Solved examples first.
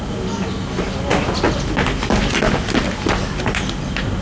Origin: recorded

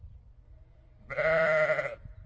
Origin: remade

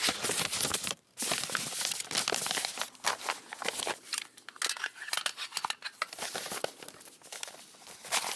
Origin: recorded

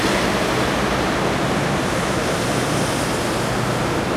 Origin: recorded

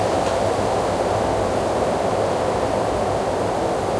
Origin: recorded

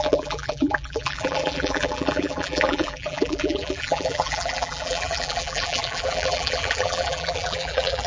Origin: remade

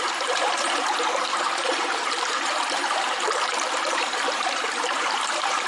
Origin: remade